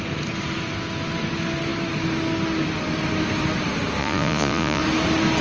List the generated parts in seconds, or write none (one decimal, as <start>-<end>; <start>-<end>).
4.0-4.8